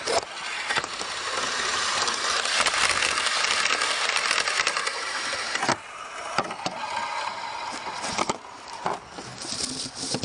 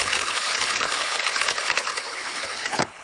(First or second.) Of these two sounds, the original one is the first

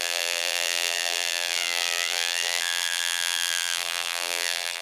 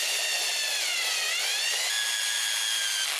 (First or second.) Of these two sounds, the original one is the second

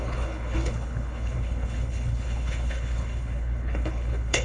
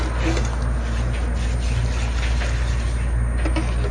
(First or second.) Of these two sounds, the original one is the second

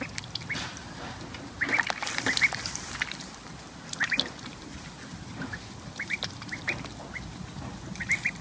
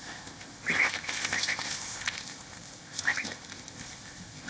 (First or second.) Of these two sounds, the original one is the first